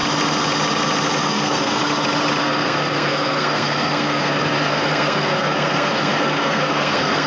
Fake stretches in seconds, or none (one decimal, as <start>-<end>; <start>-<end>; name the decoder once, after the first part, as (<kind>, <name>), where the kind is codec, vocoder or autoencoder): 1.2-1.8 (codec, SNAC); 2.4-7.3